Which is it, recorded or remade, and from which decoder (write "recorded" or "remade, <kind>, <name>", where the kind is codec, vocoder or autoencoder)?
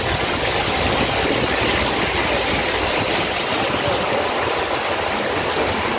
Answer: recorded